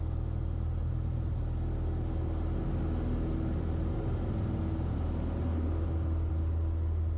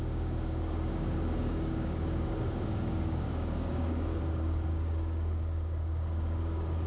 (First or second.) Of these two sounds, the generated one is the second